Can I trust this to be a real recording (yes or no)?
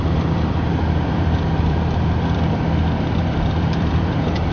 no